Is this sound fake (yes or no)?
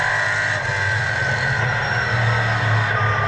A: no